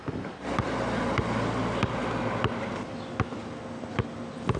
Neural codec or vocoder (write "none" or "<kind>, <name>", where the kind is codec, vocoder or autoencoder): none